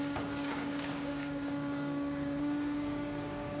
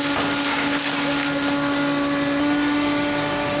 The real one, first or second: second